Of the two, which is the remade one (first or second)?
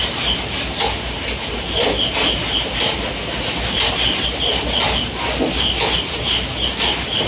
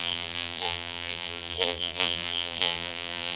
second